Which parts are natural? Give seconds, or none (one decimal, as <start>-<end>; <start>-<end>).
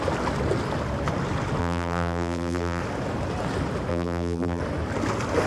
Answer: 0.0-1.6; 2.8-3.9; 4.6-5.5